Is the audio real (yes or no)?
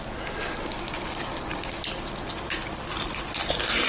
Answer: yes